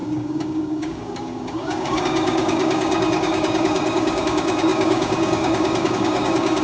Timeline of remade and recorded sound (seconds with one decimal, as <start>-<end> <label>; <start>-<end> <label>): 0.0-6.6 remade